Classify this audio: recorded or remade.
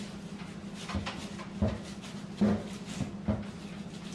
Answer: recorded